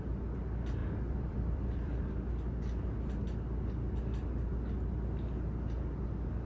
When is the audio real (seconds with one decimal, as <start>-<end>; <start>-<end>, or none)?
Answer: 0.0-0.8; 2.1-6.5